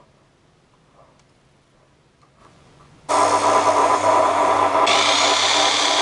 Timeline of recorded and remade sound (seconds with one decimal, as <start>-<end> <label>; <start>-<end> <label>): 0.0-2.4 recorded; 2.4-3.1 remade; 3.1-3.8 recorded; 3.8-4.8 remade; 4.8-6.0 recorded